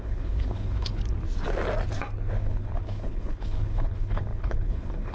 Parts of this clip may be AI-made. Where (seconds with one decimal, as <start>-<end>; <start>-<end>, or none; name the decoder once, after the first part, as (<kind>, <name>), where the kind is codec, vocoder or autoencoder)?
0.0-1.0 (codec, HILCodec); 2.3-5.1